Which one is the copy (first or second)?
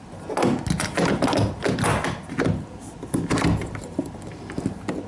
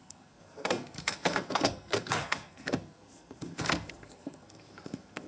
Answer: second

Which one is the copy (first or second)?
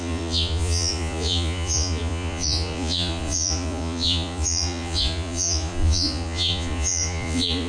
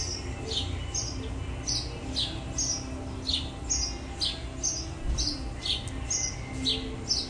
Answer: first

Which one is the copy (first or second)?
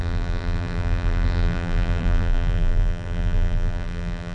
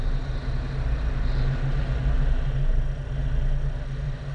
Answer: first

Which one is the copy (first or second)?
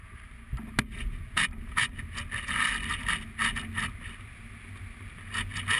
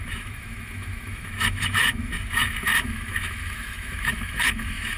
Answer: second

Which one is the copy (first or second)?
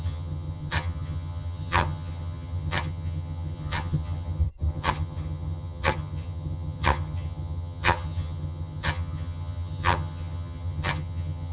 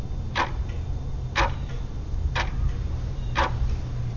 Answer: first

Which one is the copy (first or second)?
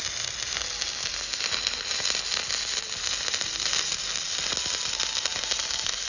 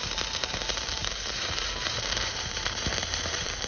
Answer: second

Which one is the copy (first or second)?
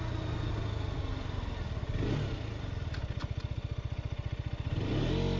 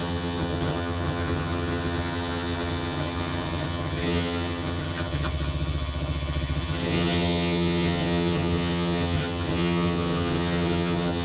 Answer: second